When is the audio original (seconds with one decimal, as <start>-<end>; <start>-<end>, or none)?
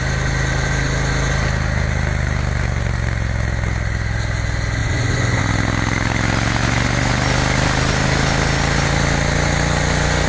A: 0.0-4.8; 5.4-10.3